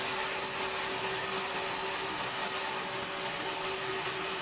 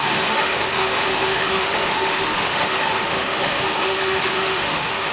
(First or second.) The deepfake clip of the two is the second